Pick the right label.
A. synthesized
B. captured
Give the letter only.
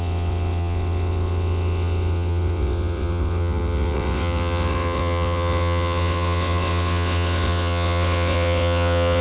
A